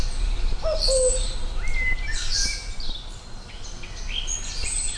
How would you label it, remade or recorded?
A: recorded